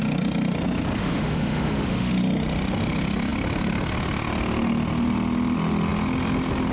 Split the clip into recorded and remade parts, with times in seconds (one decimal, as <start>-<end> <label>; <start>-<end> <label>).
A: 0.0-1.0 recorded; 1.0-2.1 remade; 2.1-6.7 recorded